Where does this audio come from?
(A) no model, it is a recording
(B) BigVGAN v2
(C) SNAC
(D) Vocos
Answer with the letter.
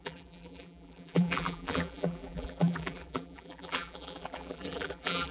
B